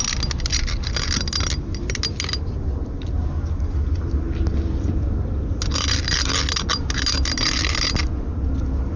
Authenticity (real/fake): real